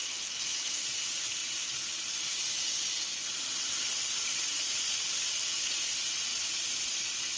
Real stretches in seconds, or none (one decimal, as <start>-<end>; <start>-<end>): 0.8-7.4